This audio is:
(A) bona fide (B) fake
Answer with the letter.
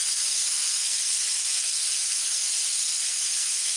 B